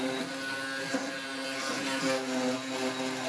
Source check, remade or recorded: recorded